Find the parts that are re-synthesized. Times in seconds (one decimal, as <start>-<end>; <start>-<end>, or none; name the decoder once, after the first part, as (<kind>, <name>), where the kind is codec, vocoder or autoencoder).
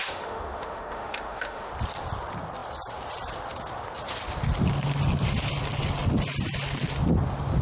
0.0-1.7 (autoencoder, DAC-VAE)